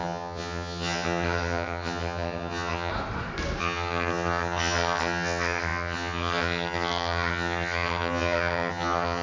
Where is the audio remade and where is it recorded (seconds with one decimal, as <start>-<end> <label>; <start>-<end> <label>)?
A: 0.0-2.9 remade; 2.9-3.6 recorded; 3.6-9.2 remade